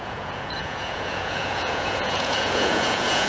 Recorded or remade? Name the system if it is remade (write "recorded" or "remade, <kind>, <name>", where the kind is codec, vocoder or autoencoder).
remade, vocoder, Vocos